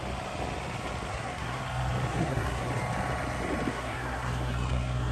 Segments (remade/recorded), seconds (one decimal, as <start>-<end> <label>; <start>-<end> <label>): 0.0-1.1 recorded; 1.1-1.6 remade; 1.6-2.1 recorded; 2.1-2.7 remade; 2.7-3.7 recorded; 3.7-5.1 remade